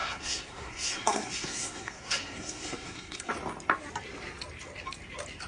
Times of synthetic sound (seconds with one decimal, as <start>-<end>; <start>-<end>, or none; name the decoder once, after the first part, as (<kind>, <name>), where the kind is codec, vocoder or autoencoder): 0.0-3.3 (codec, SNAC)